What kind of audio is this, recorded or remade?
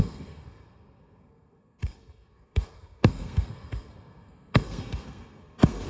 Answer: remade